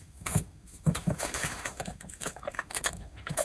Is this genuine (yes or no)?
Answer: no